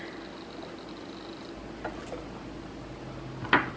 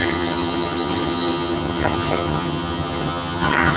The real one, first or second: first